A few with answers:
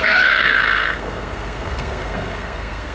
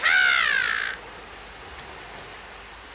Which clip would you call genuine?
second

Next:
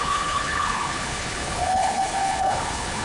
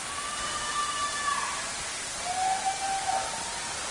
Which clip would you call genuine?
second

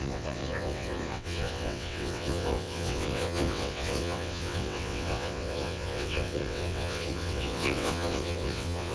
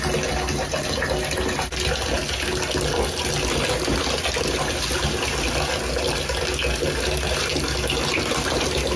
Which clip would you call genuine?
second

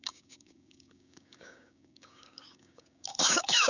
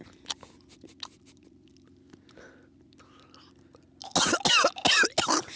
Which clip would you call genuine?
second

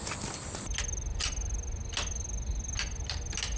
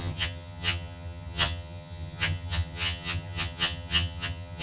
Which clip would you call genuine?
first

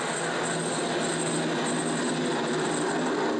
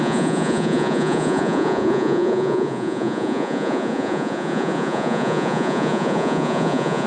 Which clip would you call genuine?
first